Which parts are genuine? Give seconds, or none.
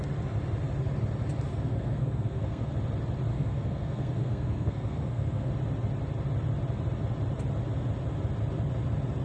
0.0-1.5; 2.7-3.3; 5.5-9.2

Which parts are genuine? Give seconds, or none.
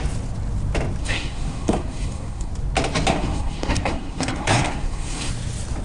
0.0-1.0; 2.5-3.1; 5.3-5.8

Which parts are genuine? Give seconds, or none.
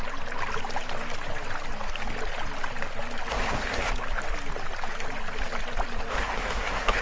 0.0-3.3; 3.9-6.1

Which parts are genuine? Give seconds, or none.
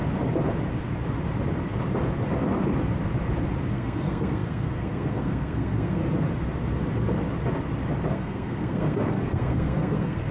0.0-3.7; 6.0-8.1